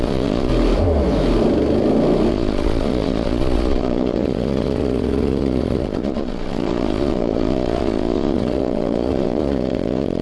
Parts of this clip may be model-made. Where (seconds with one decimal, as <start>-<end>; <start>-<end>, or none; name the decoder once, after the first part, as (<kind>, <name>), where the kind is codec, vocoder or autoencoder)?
0.0-0.5 (vocoder, Vocos); 2.3-10.2